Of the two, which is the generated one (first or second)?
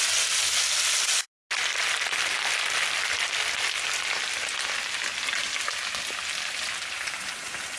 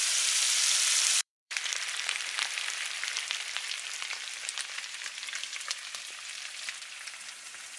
second